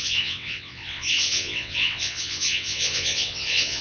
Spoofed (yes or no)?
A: yes